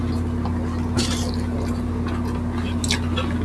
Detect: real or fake real